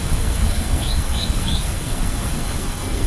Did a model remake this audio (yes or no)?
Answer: yes